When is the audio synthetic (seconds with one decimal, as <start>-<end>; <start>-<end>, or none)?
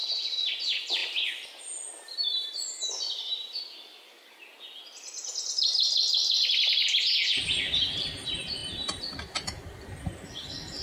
8.6-10.0